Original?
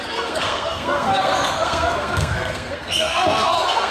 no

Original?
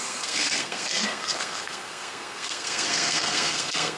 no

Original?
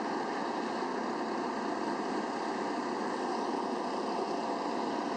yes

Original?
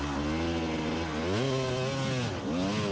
yes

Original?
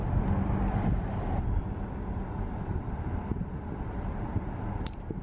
yes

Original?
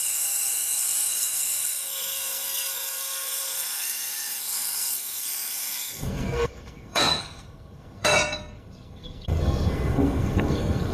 no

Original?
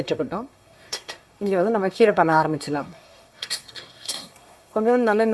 no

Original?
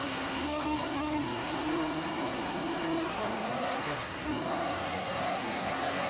no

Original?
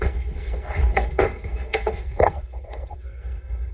no